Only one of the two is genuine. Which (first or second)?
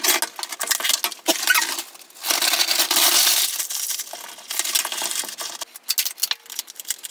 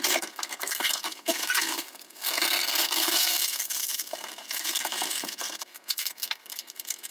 first